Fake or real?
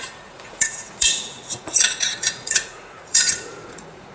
fake